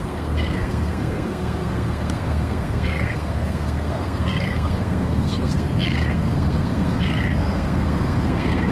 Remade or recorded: remade